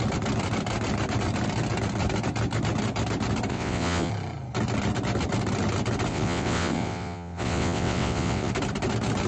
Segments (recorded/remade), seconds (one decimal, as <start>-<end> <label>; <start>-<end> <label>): 0.0-3.5 recorded; 3.5-4.1 remade; 4.1-6.1 recorded; 6.1-8.5 remade; 8.5-9.3 recorded